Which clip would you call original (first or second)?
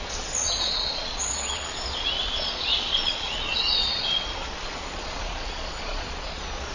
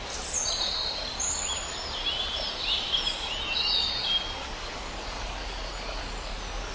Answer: second